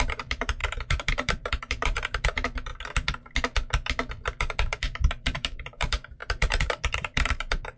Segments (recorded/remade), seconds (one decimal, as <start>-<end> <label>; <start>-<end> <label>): 0.0-2.7 remade; 2.7-4.8 recorded; 4.8-7.8 remade